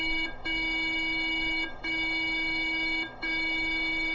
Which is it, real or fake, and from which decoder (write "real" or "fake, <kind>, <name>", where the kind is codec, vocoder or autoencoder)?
fake, autoencoder, DAC-VAE